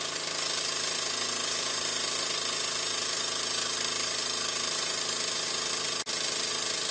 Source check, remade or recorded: recorded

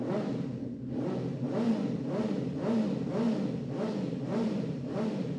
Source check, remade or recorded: recorded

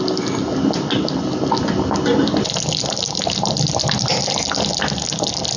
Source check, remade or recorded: recorded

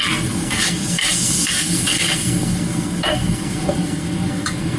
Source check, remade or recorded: remade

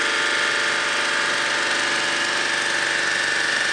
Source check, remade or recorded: recorded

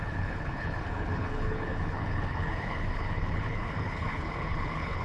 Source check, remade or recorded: remade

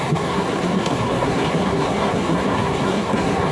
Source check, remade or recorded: remade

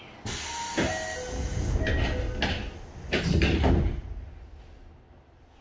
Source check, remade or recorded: recorded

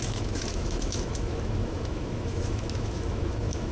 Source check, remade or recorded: remade